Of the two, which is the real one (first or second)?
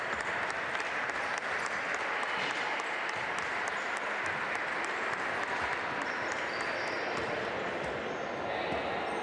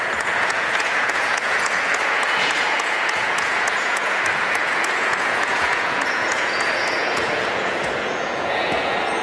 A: first